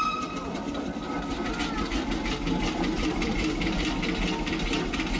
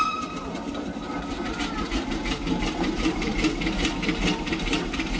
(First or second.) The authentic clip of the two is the first